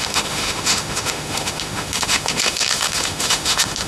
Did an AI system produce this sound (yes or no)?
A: yes